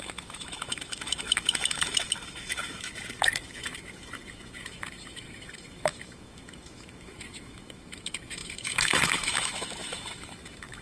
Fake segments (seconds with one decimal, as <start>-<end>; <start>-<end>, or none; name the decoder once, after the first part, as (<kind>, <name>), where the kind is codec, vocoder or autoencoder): 0.0-10.8 (autoencoder, DAC-VAE)